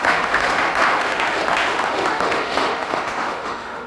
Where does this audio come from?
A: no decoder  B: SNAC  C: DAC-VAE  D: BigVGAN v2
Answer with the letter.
C